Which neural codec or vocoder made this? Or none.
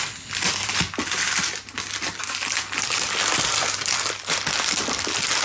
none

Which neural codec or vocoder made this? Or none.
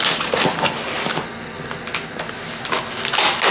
none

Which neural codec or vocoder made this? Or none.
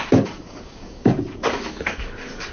codec, DAC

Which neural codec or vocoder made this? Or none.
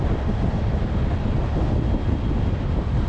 none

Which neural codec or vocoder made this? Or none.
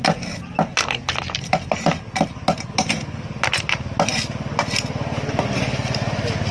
none